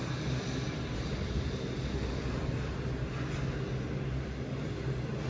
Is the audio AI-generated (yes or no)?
no